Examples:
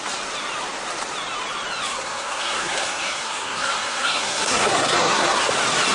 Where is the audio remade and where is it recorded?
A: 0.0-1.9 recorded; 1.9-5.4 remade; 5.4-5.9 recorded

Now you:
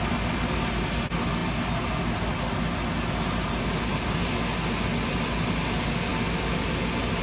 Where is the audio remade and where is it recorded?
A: 0.0-7.2 recorded

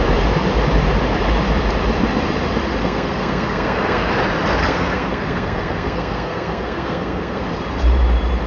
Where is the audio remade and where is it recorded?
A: 0.0-2.7 recorded; 2.7-4.1 remade; 4.1-4.6 recorded; 4.6-7.4 remade; 7.4-8.5 recorded

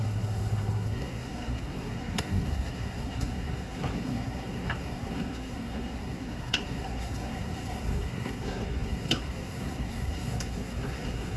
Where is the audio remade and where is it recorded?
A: 0.0-11.4 remade

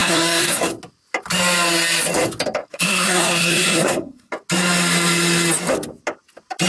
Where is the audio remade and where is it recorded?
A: 0.0-0.6 remade; 0.6-2.6 recorded; 2.6-4.3 remade; 4.3-6.7 recorded

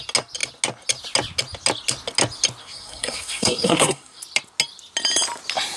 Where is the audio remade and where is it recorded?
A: 0.0-2.6 recorded; 2.6-4.2 remade; 4.2-5.8 recorded